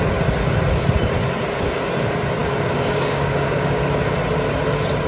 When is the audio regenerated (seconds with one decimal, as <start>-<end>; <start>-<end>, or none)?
2.4-3.8